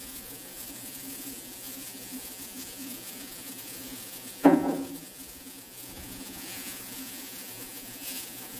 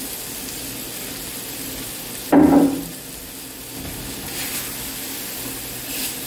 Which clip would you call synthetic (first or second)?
first